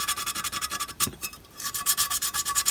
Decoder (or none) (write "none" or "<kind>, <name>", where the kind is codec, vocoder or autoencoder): vocoder, BigVGAN v2